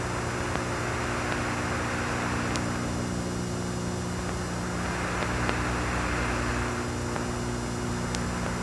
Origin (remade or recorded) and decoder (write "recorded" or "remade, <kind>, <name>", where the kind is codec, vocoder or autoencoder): recorded